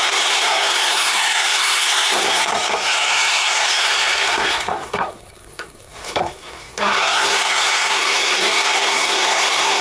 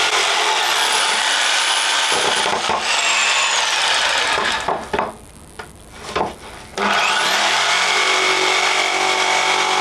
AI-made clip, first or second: first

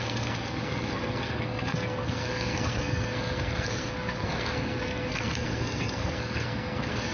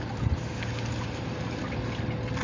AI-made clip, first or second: first